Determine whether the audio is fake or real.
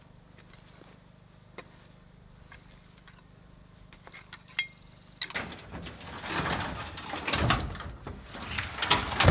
real